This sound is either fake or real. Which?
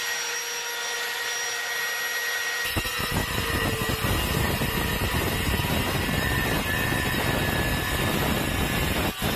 real